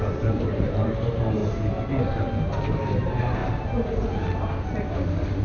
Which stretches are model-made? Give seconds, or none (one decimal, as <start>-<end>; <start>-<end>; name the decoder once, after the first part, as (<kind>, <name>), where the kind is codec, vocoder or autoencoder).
0.0-1.4 (vocoder, BigVGAN v2); 2.7-3.4